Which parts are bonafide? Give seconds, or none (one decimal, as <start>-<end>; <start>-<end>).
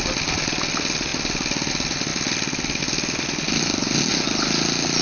0.0-5.0